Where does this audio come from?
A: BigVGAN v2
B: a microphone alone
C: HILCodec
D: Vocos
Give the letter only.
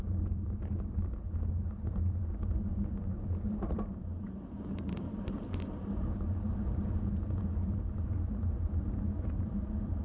A